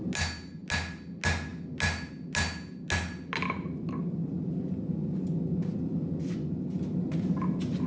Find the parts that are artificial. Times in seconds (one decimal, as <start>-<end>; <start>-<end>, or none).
none